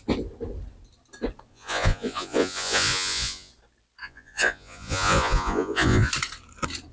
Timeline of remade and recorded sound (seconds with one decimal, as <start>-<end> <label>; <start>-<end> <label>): 0.0-1.5 recorded; 1.5-3.5 remade; 3.5-4.0 recorded; 4.0-6.1 remade; 6.1-6.9 recorded

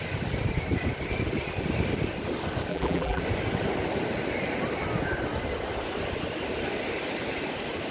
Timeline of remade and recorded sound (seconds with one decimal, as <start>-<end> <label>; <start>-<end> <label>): 0.0-2.7 recorded; 2.7-3.2 remade; 3.2-7.9 recorded